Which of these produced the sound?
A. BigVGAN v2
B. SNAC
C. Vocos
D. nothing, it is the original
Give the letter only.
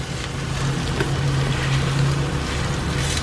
D